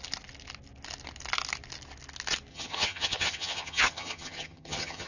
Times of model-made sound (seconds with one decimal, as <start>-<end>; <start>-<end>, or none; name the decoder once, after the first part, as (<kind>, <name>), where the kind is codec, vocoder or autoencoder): 2.5-5.1 (vocoder, HiFi-GAN)